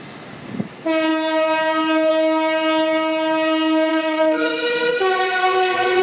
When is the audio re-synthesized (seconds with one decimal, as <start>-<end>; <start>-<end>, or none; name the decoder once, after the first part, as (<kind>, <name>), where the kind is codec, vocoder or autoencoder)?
3.9-6.0 (vocoder, WaveNeXt)